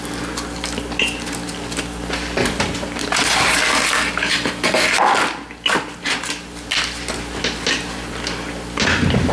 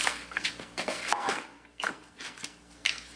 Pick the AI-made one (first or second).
second